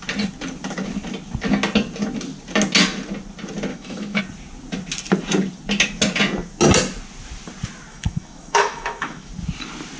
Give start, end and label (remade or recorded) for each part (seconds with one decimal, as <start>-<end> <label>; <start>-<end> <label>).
0.0-3.7 recorded; 3.7-4.2 remade; 4.2-7.9 recorded; 7.9-9.3 remade; 9.3-10.0 recorded